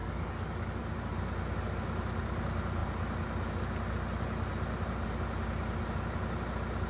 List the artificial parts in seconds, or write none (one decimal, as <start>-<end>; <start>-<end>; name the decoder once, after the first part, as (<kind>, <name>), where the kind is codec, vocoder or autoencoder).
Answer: 0.0-0.8 (codec, DAC)